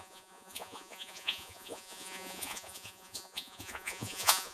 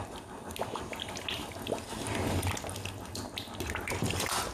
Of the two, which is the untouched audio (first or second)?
second